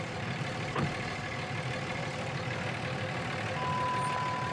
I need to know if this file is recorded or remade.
recorded